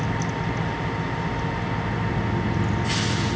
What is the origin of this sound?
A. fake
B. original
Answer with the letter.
B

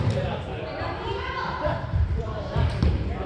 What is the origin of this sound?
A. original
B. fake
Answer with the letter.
B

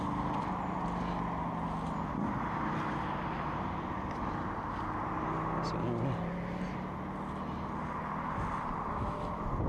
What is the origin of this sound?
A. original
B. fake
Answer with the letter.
A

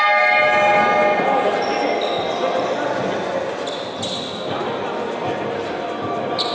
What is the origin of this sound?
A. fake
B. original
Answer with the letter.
B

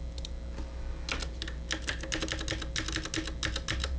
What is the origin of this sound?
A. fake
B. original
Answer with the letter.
B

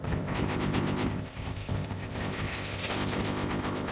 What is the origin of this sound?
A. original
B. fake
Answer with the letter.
B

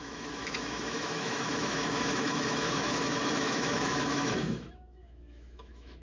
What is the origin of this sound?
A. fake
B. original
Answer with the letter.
A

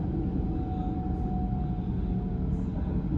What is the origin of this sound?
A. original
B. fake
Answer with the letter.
A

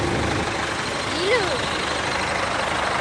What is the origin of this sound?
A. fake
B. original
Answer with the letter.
B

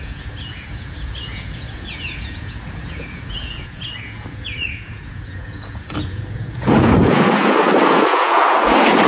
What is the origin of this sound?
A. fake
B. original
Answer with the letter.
A